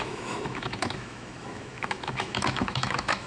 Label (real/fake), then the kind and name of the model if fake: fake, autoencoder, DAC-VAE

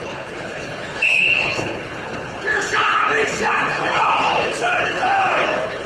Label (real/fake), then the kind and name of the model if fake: fake, codec, HILCodec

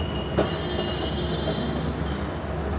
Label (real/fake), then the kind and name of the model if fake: real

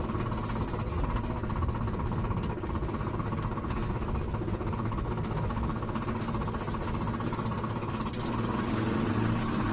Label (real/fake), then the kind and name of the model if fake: real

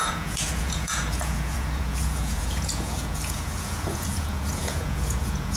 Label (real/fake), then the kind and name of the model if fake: fake, vocoder, Vocos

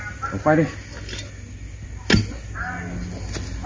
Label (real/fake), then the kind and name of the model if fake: real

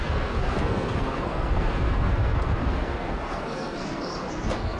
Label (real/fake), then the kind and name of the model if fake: fake, codec, SNAC